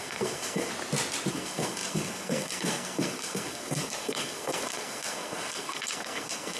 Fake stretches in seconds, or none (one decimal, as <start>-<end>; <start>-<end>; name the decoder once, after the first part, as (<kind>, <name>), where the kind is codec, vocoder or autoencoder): 0.0-0.7 (codec, SNAC); 1.3-6.6